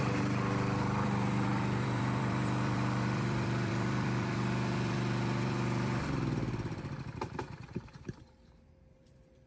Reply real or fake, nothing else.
fake